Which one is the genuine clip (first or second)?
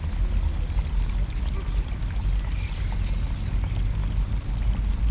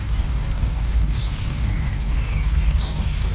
first